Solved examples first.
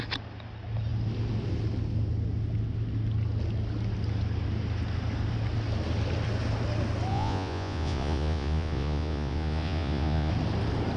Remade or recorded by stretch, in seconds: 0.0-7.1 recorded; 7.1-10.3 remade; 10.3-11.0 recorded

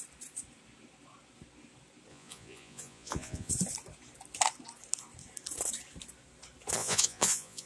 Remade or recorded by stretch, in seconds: 0.0-2.1 recorded; 2.1-3.5 remade; 3.5-6.8 recorded; 6.8-7.7 remade

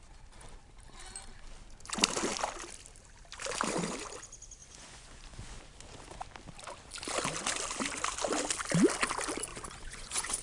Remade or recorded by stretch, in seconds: 0.0-4.6 recorded; 4.6-5.6 remade; 5.6-9.5 recorded; 9.5-10.4 remade

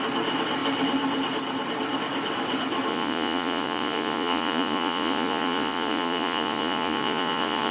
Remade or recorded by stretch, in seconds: 0.0-2.9 recorded; 2.9-7.7 remade